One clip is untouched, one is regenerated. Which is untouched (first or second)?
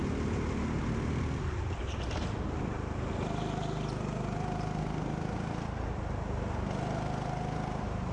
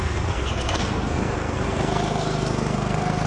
first